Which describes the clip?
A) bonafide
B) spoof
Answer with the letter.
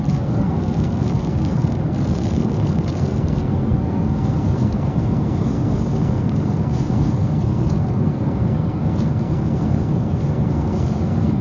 B